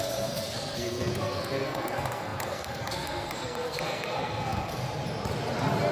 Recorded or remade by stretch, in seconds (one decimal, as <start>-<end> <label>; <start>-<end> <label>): 0.0-4.8 remade; 4.8-5.9 recorded